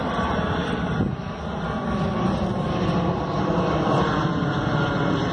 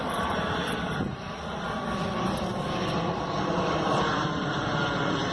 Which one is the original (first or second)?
first